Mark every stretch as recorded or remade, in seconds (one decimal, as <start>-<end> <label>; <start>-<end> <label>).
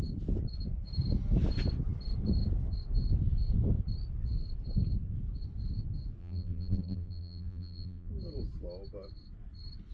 0.0-6.2 recorded; 6.2-8.1 remade; 8.1-9.9 recorded